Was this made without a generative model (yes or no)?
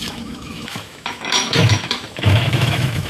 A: no